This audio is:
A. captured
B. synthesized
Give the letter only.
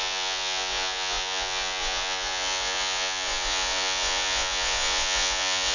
B